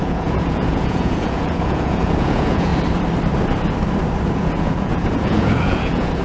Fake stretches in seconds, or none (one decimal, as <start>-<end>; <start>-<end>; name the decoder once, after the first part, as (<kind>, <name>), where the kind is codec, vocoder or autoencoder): 0.0-2.7 (vocoder, Vocos); 4.3-6.2

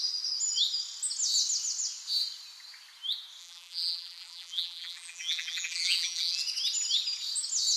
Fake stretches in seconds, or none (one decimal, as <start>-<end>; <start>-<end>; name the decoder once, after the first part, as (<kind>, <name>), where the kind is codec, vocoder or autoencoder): 3.4-6.4 (vocoder, BigVGAN v2)

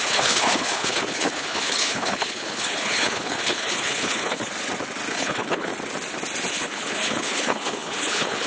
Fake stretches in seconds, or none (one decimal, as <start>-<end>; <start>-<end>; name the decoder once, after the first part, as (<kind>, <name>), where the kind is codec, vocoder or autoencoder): 0.0-4.5 (codec, HILCodec); 5.1-5.7; 6.5-8.5

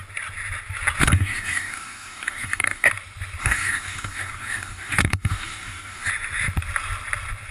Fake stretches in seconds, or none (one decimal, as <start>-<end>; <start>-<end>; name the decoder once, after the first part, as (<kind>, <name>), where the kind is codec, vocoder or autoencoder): 1.0-2.9 (codec, DAC); 3.4-6.1

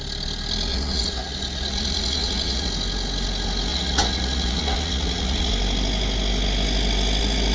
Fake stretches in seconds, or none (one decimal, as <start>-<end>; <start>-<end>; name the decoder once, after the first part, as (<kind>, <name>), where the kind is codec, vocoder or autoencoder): 0.7-2.7 (vocoder, Vocos); 3.7-5.5

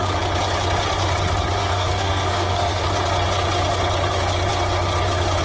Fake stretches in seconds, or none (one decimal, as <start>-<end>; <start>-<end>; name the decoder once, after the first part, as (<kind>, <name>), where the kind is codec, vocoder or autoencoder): 1.6-2.8 (codec, SNAC)

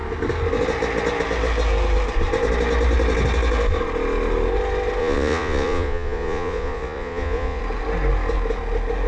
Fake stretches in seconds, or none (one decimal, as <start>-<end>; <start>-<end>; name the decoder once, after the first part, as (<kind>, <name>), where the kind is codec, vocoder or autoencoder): 5.0-7.6 (vocoder, Vocos)

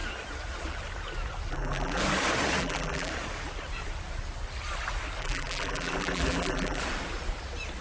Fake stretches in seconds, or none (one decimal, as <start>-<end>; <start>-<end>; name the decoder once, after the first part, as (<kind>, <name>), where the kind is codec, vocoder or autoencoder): 1.5-2.0 (vocoder, BigVGAN v2); 2.6-3.1; 5.2-6.8